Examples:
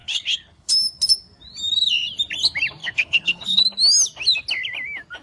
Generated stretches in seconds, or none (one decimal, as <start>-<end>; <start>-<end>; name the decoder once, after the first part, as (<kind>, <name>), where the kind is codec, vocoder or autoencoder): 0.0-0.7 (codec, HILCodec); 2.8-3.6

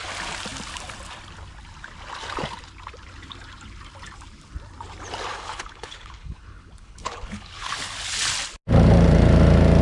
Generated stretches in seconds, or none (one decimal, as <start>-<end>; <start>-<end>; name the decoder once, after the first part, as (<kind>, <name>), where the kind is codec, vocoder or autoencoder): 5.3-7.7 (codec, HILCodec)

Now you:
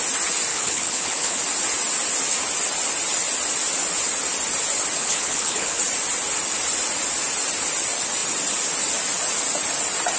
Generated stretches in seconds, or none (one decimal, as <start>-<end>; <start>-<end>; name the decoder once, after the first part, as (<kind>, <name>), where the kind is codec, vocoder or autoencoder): 0.5-1.4 (codec, HILCodec); 5.0-5.8

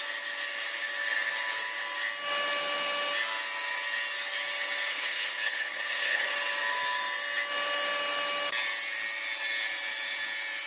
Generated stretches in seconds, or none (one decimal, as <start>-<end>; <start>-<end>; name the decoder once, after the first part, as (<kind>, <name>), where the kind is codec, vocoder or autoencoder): 4.9-6.3 (codec, HILCodec)